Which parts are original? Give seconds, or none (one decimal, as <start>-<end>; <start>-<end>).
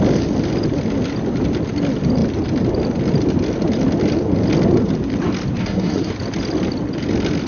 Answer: 0.0-5.6; 6.1-7.5